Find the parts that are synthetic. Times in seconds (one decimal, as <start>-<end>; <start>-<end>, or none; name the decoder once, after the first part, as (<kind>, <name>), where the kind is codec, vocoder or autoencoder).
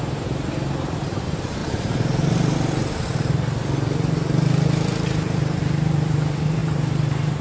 0.0-1.6 (vocoder, BigVGAN v2); 5.6-7.4